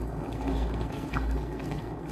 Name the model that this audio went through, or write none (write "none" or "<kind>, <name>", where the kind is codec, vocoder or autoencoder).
codec, SNAC